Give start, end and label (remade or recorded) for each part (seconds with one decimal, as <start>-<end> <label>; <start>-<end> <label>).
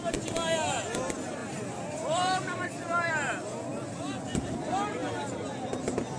0.0-1.4 recorded; 1.4-3.1 remade; 3.1-6.2 recorded